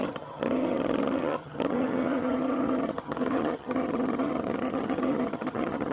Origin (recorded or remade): remade